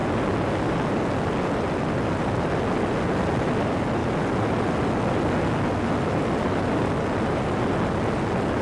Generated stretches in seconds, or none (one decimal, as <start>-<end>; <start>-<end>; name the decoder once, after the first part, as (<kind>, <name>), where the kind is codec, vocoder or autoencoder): none